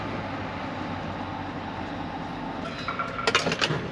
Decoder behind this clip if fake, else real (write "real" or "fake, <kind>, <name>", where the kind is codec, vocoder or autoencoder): real